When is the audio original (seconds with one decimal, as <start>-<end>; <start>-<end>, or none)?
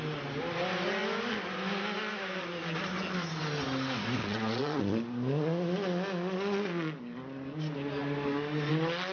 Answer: 0.0-4.2; 4.8-9.1